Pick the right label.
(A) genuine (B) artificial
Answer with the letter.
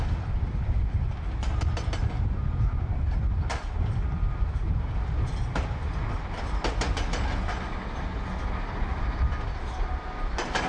A